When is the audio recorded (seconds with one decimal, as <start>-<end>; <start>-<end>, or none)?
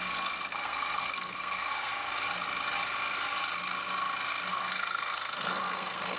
1.9-4.5